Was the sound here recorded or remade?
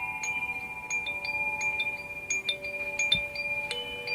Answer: recorded